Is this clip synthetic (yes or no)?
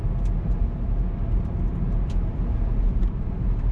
no